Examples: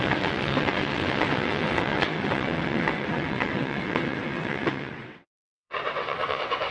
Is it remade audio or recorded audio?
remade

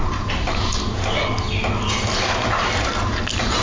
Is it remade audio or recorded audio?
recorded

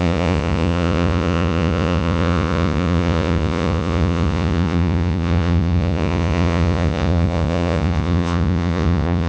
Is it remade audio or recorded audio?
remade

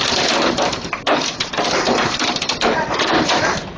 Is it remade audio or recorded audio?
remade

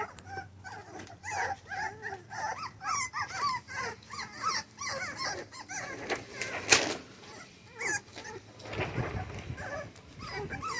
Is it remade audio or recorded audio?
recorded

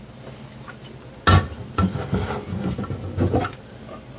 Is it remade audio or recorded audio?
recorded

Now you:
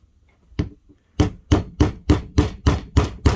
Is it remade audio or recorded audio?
recorded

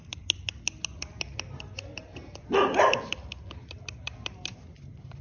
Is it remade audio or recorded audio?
recorded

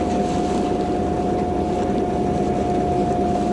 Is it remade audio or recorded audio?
recorded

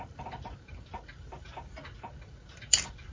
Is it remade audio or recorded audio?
recorded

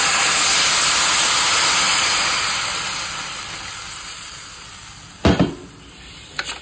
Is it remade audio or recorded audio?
recorded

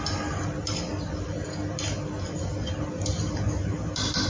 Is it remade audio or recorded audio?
recorded